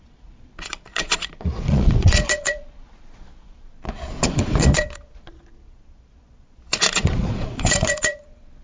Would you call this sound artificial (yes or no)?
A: yes